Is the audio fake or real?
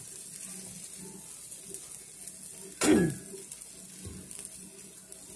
real